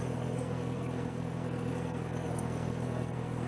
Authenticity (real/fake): fake